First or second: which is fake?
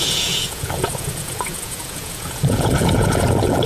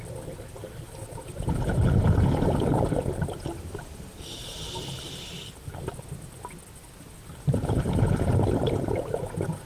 first